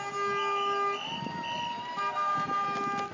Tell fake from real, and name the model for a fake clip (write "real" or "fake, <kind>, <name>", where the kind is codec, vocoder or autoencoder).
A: real